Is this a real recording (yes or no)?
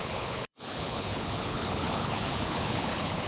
no